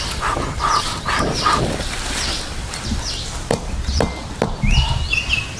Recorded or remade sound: recorded